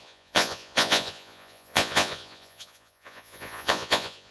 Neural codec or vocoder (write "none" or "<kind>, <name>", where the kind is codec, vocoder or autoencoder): vocoder, Vocos